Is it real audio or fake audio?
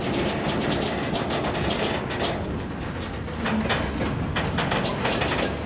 real